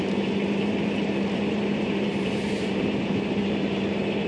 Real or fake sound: fake